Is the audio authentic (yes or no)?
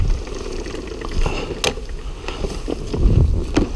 yes